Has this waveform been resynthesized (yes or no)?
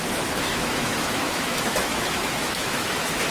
yes